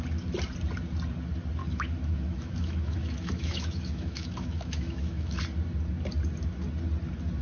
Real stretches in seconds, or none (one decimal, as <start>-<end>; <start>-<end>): 0.0-1.6; 5.4-7.4